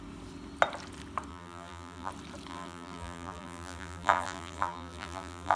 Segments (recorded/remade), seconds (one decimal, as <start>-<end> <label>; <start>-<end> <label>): 0.0-1.3 recorded; 1.3-2.1 remade; 2.1-2.5 recorded; 2.5-5.6 remade